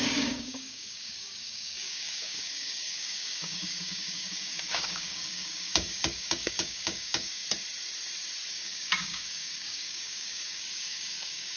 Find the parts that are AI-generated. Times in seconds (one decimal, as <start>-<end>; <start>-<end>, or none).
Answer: 0.0-7.4; 8.5-11.6